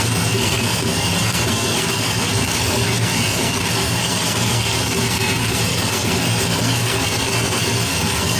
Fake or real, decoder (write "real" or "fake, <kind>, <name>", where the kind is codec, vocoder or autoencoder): fake, codec, SNAC